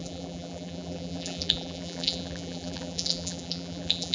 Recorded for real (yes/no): no